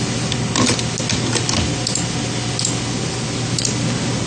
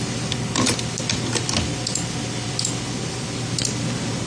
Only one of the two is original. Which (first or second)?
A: first